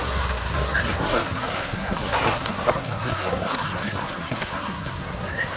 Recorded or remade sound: remade